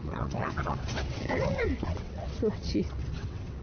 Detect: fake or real fake